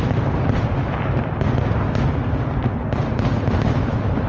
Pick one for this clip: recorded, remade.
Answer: recorded